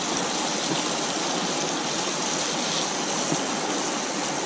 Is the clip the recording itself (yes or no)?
yes